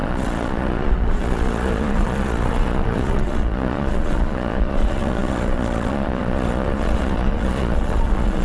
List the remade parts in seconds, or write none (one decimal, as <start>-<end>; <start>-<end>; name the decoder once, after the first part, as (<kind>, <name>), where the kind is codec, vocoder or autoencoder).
0.0-8.4 (vocoder, Vocos)